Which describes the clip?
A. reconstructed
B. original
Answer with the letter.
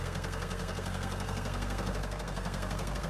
A